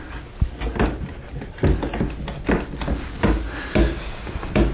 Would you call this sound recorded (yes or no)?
yes